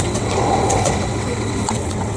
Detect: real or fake fake